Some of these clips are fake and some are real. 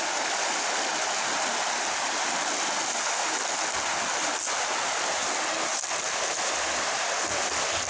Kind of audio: real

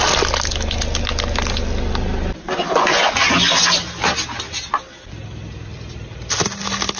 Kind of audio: real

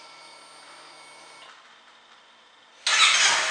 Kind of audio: real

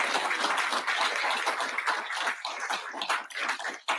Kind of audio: real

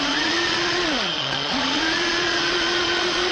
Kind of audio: fake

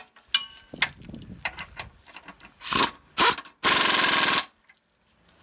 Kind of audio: real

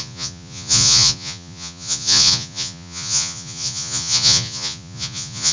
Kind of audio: fake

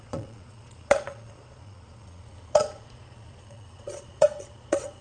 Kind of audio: fake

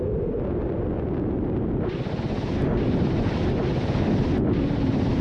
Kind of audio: real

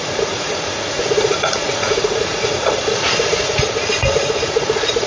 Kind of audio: fake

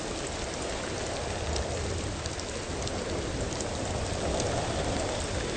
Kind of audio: real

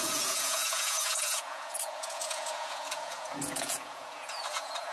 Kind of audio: fake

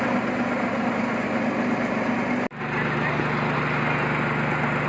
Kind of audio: real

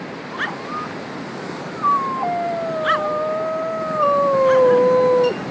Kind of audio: real